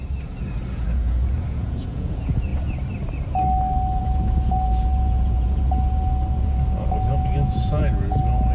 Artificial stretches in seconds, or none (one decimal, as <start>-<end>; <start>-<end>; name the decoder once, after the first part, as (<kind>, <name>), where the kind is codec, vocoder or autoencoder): 0.7-2.5 (vocoder, Vocos); 4.0-8.5